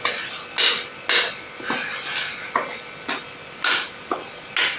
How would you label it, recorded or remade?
recorded